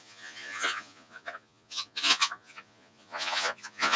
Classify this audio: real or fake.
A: fake